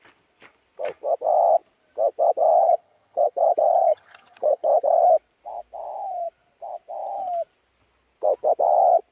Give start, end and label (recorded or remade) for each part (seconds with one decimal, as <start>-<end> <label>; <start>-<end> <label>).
0.0-2.6 recorded; 2.6-5.0 remade; 5.0-9.1 recorded